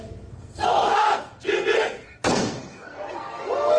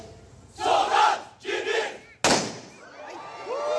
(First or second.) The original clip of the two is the second